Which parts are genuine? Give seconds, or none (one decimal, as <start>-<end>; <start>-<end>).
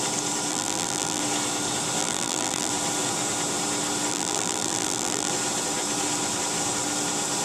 0.0-0.5; 1.2-2.0; 2.7-4.1; 5.3-7.4